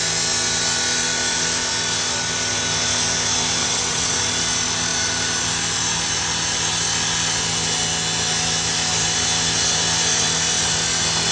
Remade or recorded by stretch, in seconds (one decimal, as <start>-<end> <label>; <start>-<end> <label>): 0.0-3.6 recorded; 3.6-4.2 remade; 4.2-11.3 recorded